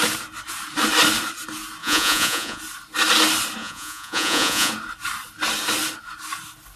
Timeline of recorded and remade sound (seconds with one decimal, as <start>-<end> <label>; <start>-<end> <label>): 0.0-1.8 recorded; 1.8-2.6 remade; 2.6-3.6 recorded; 3.6-4.7 remade; 4.7-6.8 recorded